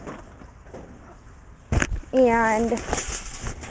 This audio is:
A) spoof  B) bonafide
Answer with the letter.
B